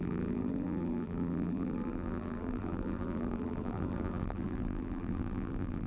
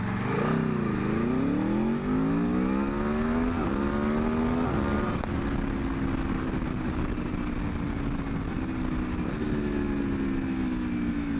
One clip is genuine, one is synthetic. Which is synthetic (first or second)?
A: first